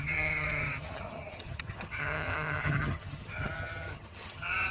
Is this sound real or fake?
fake